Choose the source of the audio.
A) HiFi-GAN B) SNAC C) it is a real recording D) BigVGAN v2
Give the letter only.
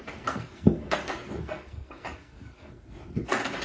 B